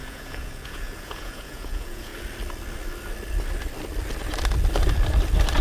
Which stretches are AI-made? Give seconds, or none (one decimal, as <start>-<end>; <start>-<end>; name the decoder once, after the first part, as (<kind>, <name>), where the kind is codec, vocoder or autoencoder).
0.0-2.1 (vocoder, Vocos)